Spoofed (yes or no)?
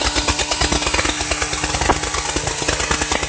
no